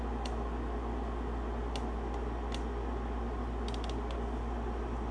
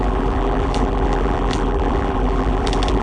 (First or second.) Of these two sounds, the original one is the first